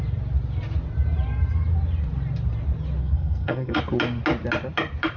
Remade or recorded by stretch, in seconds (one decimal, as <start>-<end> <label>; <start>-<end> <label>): 0.0-3.0 recorded; 3.0-3.8 remade; 3.8-5.2 recorded